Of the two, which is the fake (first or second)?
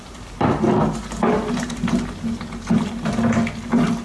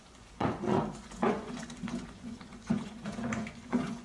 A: second